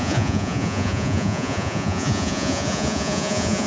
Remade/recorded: remade